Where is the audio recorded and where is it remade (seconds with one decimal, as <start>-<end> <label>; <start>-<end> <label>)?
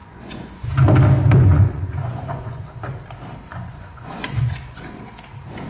0.0-0.7 remade; 0.7-1.4 recorded; 1.4-2.9 remade; 2.9-3.5 recorded; 3.5-5.2 remade; 5.2-5.7 recorded